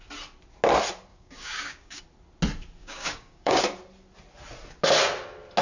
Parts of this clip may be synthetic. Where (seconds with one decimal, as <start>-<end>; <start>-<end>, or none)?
1.1-2.0; 2.8-3.6